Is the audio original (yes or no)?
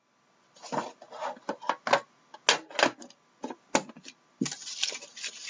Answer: yes